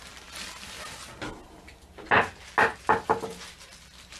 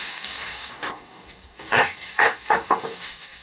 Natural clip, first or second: first